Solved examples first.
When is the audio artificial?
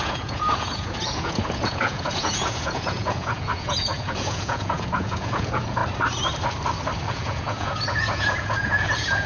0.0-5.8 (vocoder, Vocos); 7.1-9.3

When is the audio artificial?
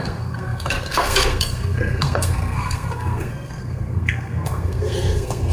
0.0-5.5 (codec, SNAC)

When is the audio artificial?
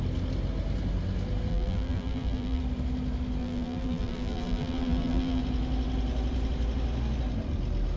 1.5-2.6 (vocoder, BigVGAN v2); 3.4-5.4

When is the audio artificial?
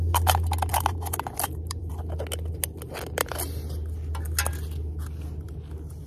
0.7-1.9 (vocoder, BigVGAN v2)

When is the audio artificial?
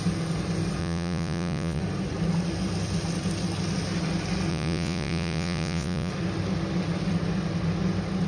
0.8-1.8 (vocoder, Vocos); 4.5-6.1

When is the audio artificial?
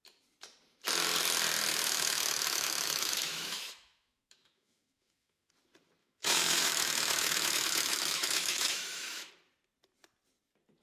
1.7-5.5 (autoencoder, DAC-VAE); 6.0-9.3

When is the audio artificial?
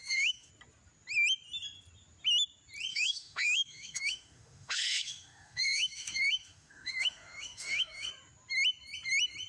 0.0-0.5 (autoencoder, DAC-VAE); 2.9-8.1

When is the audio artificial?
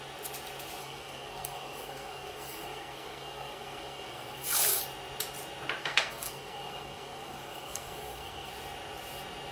0.8-4.8 (codec, SNAC); 5.8-8.5